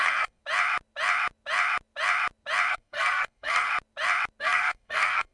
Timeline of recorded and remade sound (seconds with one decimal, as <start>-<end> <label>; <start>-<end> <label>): 0.0-0.4 remade; 0.4-2.7 recorded; 2.7-3.7 remade; 3.7-4.4 recorded; 4.4-5.3 remade